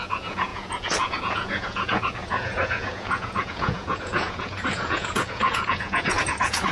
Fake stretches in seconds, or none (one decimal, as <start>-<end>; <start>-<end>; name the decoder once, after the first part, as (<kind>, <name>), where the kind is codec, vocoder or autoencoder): 0.0-6.7 (vocoder, Vocos)